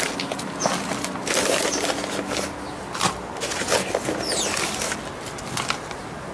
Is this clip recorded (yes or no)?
yes